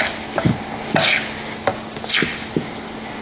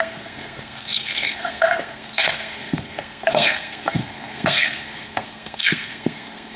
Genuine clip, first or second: first